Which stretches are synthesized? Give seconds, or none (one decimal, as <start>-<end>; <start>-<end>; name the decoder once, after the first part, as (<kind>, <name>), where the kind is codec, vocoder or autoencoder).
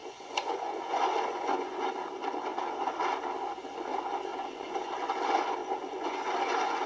0.0-1.9 (vocoder, Vocos); 4.3-4.9; 5.6-6.9